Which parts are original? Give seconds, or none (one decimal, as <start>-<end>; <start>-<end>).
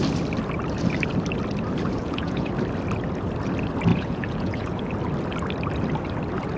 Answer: 0.0-2.0; 2.5-3.9; 4.9-6.6